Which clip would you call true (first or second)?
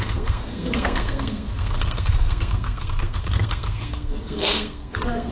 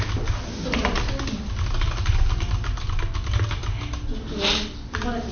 second